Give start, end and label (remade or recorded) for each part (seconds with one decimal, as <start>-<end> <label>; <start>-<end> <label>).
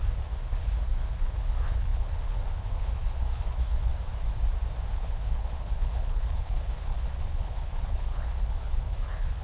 0.0-3.9 remade; 3.9-4.9 recorded; 4.9-9.4 remade